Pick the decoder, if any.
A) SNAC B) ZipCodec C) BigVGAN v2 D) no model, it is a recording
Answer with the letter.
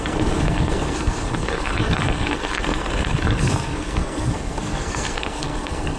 A